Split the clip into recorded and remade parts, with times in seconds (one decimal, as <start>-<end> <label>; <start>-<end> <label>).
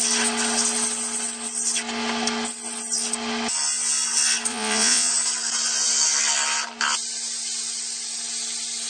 0.0-4.5 recorded; 4.5-5.1 remade; 5.1-8.9 recorded